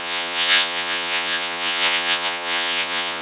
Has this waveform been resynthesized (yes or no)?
yes